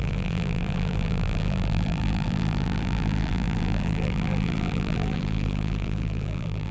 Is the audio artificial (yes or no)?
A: yes